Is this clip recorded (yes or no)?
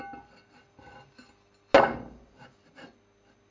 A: yes